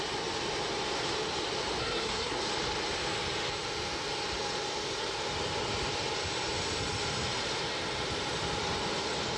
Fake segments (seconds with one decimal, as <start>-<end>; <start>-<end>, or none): 1.8-2.4